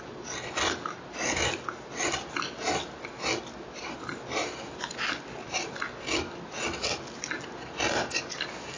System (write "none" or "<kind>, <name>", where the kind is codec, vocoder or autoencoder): none